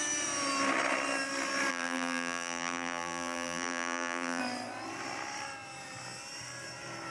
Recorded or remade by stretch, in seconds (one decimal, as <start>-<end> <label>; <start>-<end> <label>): 0.0-1.7 recorded; 1.7-4.4 remade; 4.4-7.1 recorded